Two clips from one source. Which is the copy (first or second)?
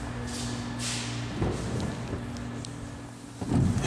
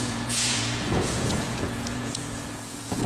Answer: second